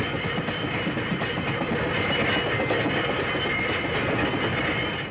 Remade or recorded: recorded